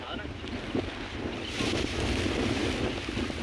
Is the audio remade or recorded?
recorded